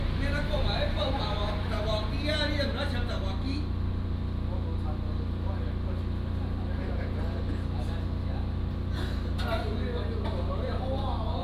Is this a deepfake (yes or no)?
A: no